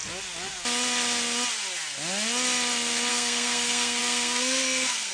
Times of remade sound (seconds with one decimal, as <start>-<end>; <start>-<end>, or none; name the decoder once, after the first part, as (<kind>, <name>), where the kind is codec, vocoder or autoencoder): 3.1-5.1 (codec, SNAC)